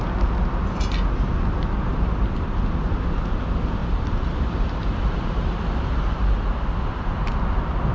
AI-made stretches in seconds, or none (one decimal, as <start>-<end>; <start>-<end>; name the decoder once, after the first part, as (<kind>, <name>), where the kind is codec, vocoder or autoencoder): 3.8-4.8 (vocoder, BigVGAN v2)